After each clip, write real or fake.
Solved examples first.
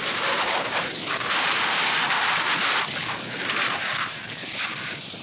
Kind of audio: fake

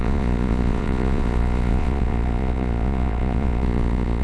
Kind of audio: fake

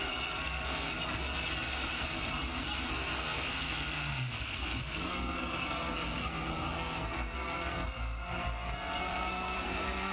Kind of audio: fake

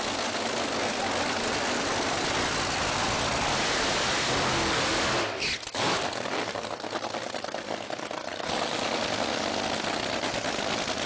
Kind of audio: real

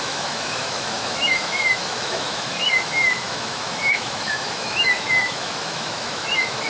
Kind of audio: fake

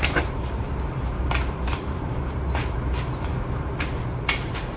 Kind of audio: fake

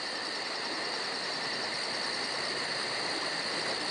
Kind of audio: real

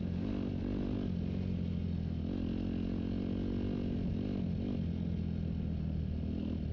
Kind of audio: real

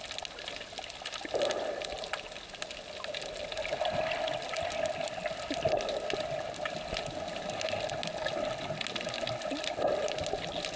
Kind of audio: real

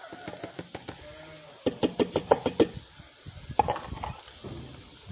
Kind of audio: real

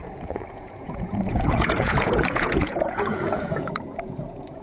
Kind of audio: fake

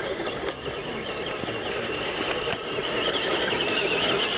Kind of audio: real